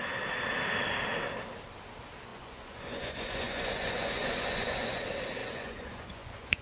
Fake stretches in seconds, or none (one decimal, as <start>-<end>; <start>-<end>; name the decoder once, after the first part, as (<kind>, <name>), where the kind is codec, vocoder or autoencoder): 2.3-5.0 (vocoder, Vocos); 5.4-6.6